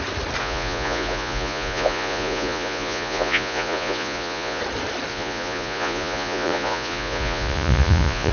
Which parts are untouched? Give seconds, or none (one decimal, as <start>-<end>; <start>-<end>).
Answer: 0.0-0.4; 4.6-5.1